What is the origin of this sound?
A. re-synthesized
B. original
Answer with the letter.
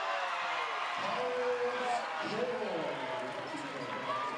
B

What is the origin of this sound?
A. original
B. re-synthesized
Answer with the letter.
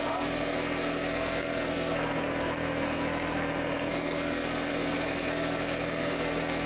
B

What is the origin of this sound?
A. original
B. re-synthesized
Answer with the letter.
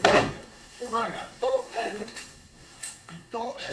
B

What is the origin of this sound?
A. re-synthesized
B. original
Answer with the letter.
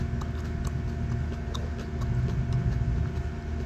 B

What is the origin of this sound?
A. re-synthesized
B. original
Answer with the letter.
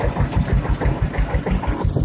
B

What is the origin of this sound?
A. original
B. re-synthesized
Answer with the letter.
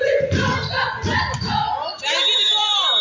A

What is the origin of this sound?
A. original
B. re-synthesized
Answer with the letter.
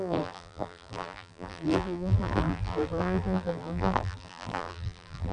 B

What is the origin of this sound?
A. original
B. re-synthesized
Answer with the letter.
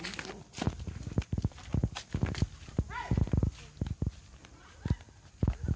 A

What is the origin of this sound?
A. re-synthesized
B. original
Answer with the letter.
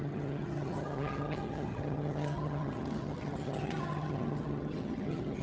A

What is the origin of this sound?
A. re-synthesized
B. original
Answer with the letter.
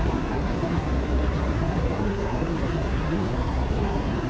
A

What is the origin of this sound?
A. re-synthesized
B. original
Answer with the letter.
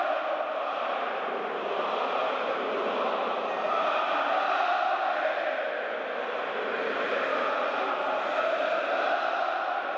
B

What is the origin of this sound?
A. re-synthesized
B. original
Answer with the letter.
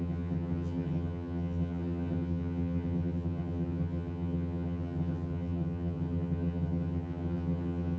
A